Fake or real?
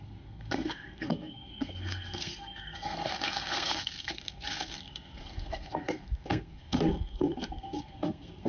fake